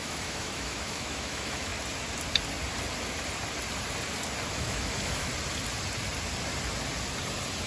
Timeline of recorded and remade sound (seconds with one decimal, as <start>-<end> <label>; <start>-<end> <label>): 0.0-1.7 remade; 1.7-4.5 recorded; 4.5-5.3 remade; 5.3-7.7 recorded